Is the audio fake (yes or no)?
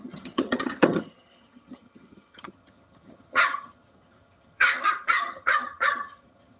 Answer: yes